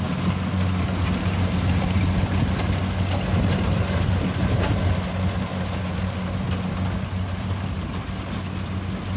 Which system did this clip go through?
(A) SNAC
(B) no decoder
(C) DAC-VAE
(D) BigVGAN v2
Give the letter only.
B